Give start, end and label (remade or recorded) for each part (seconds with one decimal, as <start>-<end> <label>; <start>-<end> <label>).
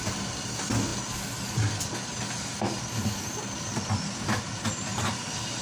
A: 0.0-5.6 recorded